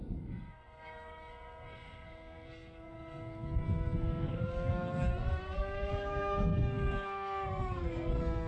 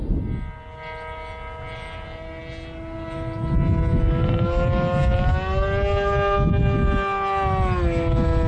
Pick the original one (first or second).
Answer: second